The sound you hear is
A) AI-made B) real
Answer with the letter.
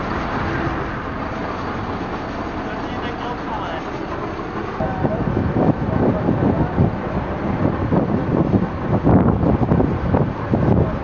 B